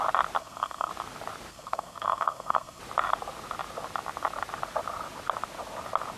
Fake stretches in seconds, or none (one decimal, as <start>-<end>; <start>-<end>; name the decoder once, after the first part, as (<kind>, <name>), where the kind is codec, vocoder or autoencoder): 0.4-0.9 (codec, SNAC); 1.5-2.8